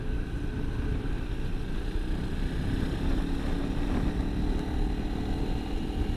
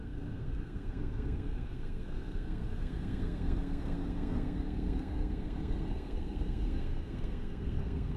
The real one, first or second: first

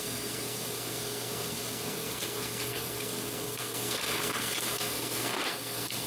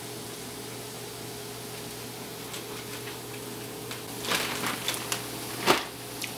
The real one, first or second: second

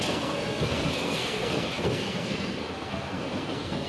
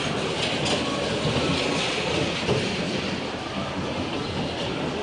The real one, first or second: second